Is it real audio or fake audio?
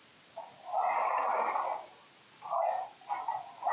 real